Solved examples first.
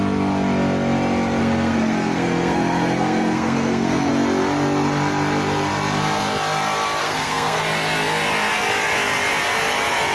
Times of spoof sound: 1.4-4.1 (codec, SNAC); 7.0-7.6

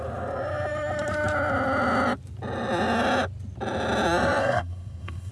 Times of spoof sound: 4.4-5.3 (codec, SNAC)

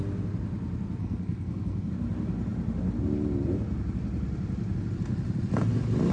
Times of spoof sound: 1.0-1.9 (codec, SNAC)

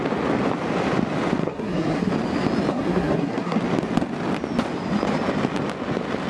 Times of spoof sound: 1.4-2.1 (codec, SNAC); 2.7-3.6

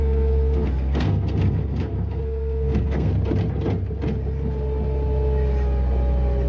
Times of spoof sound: 0.0-3.1 (codec, SNAC)